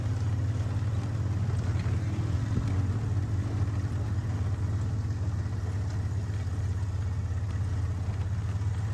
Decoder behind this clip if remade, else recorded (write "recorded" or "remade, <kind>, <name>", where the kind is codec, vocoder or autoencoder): recorded